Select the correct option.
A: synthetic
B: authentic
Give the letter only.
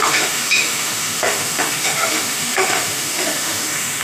A